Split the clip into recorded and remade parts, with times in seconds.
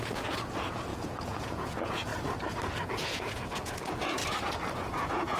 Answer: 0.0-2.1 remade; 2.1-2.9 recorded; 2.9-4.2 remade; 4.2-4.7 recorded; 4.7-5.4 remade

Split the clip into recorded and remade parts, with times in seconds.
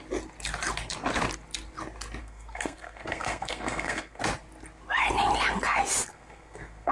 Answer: 0.0-2.2 recorded; 2.2-4.2 remade; 4.2-6.1 recorded; 6.1-6.9 remade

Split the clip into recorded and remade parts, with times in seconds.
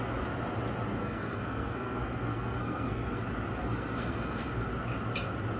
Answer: 0.0-1.0 recorded; 1.0-3.2 remade; 3.2-3.6 recorded; 3.6-4.7 remade; 4.7-5.6 recorded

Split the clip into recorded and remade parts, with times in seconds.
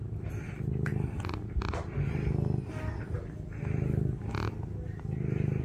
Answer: 0.0-5.6 recorded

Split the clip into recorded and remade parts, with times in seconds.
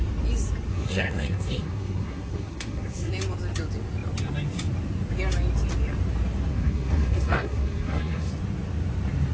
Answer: 0.0-0.7 recorded; 0.7-3.1 remade; 3.1-6.5 recorded; 6.5-8.3 remade; 8.3-9.3 recorded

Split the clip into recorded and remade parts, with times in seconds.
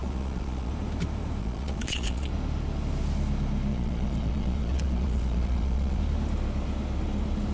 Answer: 0.0-0.7 remade; 0.7-1.4 recorded; 1.4-2.3 remade; 2.3-3.7 recorded; 3.7-6.0 remade; 6.0-7.5 recorded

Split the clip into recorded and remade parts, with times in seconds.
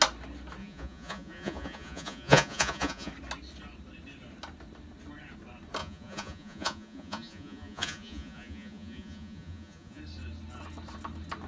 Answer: 0.0-0.6 recorded; 0.6-3.1 remade; 3.1-5.8 recorded; 5.8-10.0 remade; 10.0-11.5 recorded